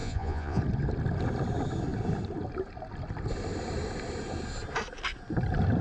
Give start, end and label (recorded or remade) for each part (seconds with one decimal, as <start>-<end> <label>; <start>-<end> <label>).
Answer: 0.0-0.6 remade; 0.6-5.8 recorded

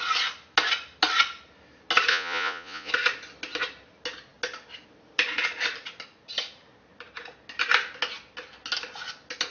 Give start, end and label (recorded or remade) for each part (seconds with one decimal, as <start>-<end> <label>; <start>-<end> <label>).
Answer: 0.0-2.1 recorded; 2.1-2.9 remade; 2.9-9.5 recorded

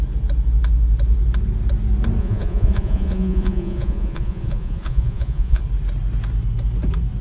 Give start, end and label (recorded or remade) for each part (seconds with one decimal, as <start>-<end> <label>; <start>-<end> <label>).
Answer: 0.0-2.2 recorded; 2.2-5.6 remade; 5.6-7.2 recorded

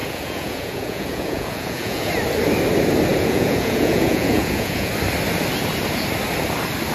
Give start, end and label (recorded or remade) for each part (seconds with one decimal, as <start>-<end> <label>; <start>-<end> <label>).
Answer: 0.0-2.1 remade; 2.1-3.1 recorded; 3.1-4.9 remade; 4.9-6.9 recorded

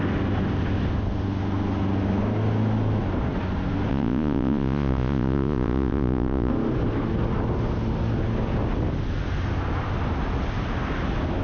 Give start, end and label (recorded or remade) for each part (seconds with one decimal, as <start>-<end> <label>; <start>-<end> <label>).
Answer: 0.0-3.9 recorded; 3.9-6.5 remade; 6.5-11.4 recorded

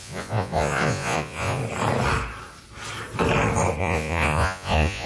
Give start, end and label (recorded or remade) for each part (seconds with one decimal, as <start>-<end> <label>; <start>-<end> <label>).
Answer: 0.0-1.6 remade; 1.6-3.8 recorded; 3.8-5.1 remade

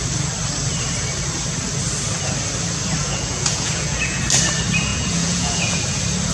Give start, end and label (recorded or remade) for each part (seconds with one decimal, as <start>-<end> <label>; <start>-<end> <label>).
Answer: 0.0-3.0 recorded; 3.0-4.2 remade; 4.2-4.9 recorded; 4.9-5.8 remade; 5.8-6.3 recorded

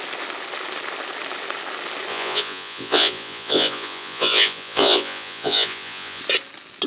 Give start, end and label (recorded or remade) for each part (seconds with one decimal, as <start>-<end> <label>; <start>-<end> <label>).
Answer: 0.0-2.1 recorded; 2.1-6.2 remade; 6.2-6.9 recorded